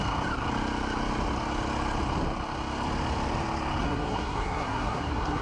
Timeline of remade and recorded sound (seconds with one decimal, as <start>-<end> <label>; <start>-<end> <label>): 0.0-3.8 recorded; 3.8-5.4 remade